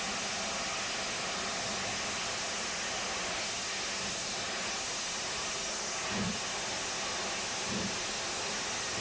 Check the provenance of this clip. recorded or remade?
recorded